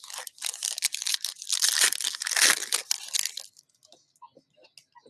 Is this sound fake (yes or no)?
no